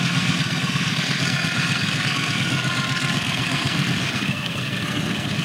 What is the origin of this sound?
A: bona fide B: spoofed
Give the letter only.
B